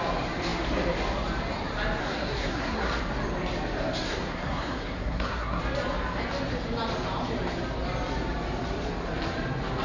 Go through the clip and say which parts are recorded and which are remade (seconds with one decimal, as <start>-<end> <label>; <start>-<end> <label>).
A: 0.0-2.0 recorded; 2.0-2.9 remade; 2.9-4.1 recorded; 4.1-5.6 remade; 5.6-9.8 recorded